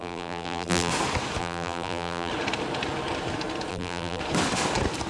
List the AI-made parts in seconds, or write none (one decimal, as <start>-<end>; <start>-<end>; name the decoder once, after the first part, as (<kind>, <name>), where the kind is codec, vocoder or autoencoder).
0.0-0.9 (vocoder, BigVGAN v2); 1.4-2.3; 3.7-4.2